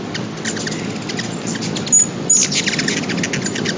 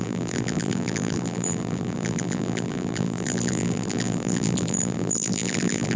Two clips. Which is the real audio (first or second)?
first